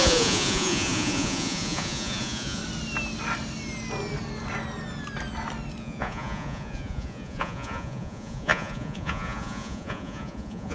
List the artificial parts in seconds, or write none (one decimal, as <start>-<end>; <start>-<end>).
0.0-2.6; 5.8-10.7